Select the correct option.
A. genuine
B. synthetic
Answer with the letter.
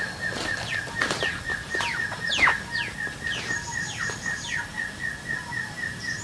A